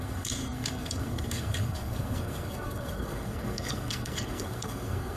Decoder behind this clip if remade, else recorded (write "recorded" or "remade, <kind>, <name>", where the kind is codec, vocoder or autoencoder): remade, codec, SNAC